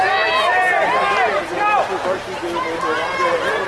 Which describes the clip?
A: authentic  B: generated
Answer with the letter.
A